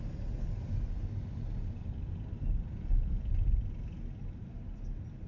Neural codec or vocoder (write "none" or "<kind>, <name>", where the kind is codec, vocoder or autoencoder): none